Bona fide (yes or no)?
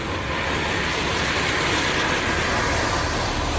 yes